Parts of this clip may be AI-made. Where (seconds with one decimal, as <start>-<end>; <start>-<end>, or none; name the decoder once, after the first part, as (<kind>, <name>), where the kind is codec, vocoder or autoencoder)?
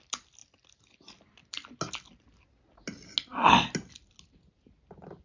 none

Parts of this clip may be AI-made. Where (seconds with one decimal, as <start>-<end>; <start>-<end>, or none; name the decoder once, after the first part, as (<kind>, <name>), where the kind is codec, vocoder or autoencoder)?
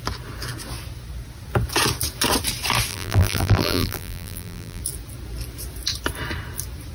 2.9-4.8 (vocoder, BigVGAN v2)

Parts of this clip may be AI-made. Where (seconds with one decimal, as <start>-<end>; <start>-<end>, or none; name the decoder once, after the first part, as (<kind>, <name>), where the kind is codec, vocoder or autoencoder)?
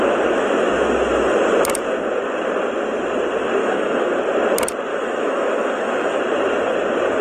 3.6-4.1 (autoencoder, DAC-VAE); 4.9-6.2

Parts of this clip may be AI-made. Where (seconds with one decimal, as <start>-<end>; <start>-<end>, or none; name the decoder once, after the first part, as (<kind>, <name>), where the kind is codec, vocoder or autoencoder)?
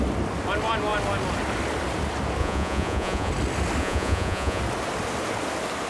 2.4-3.3 (vocoder, Vocos); 3.8-4.6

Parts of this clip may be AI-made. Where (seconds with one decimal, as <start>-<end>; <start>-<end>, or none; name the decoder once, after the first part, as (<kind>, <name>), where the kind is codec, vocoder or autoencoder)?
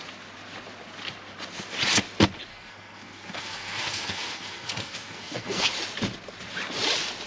2.5-5.7 (codec, SNAC)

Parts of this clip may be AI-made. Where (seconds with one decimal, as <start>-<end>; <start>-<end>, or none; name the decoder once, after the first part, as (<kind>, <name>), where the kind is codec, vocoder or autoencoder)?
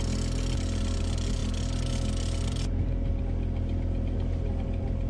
none